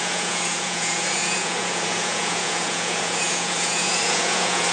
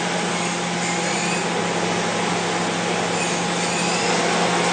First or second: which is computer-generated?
first